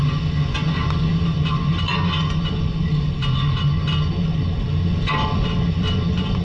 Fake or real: real